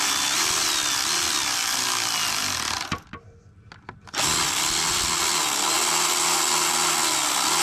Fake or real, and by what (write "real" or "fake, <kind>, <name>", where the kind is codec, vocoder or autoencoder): real